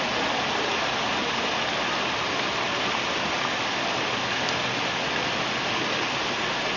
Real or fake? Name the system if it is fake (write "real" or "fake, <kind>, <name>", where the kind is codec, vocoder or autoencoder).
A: real